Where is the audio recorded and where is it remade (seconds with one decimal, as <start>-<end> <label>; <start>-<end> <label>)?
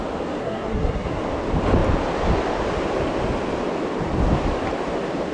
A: 0.0-0.4 recorded; 0.4-1.2 remade; 1.2-5.3 recorded